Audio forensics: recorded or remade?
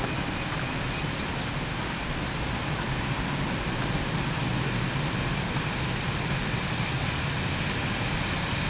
recorded